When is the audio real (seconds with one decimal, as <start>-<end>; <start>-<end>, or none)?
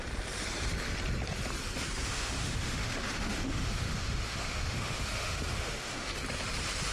0.0-2.0; 6.1-6.9